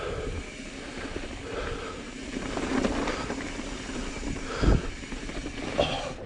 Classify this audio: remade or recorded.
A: recorded